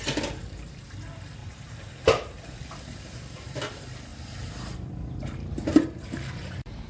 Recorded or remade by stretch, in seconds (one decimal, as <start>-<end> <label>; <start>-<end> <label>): 0.0-1.4 recorded; 1.4-2.8 remade; 2.8-4.1 recorded; 4.1-6.9 remade